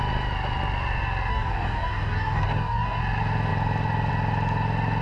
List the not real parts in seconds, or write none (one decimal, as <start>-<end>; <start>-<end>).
1.3-3.0